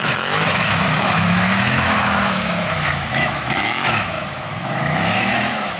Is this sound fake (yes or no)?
yes